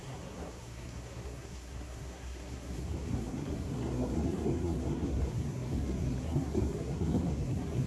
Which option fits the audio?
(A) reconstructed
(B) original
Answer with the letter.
A